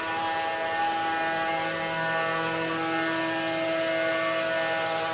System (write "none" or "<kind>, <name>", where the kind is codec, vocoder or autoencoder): none